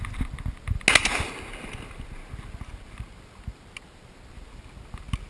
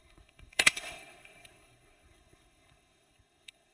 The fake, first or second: second